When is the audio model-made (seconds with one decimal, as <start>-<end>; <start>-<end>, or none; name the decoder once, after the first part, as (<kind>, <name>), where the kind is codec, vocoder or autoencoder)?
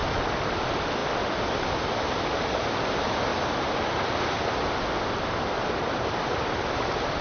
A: none